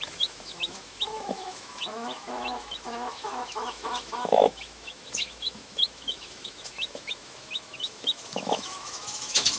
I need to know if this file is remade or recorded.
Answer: remade